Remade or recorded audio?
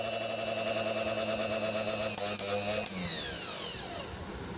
recorded